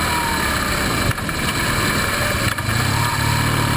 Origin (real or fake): real